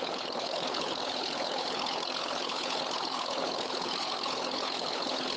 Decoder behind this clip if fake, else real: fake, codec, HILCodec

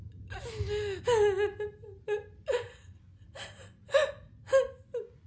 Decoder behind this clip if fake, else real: real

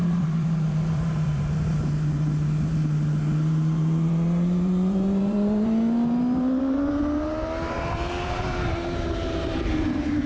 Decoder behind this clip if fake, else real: fake, vocoder, BigVGAN v2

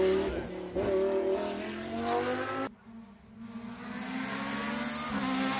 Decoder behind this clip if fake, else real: real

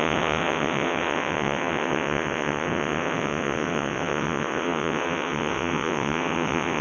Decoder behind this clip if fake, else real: fake, vocoder, WaveNeXt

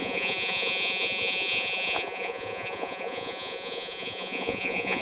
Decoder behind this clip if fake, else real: fake, vocoder, Vocos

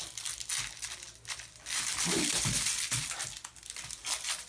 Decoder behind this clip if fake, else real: real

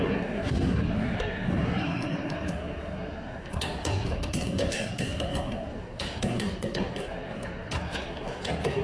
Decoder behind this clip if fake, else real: fake, codec, SNAC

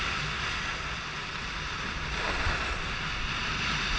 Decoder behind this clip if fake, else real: real